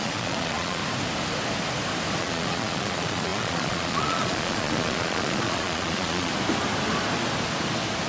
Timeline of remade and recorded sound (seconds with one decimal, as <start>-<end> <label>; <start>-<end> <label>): 0.0-0.8 remade; 0.8-2.2 recorded; 2.2-6.3 remade; 6.3-8.1 recorded